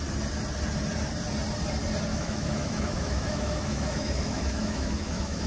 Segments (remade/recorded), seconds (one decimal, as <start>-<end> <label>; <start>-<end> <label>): 0.0-2.1 recorded; 2.1-5.5 remade